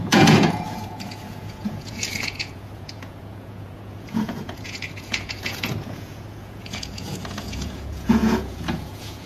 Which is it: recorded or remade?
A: remade